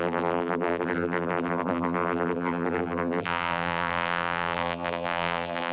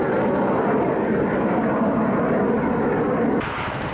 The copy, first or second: first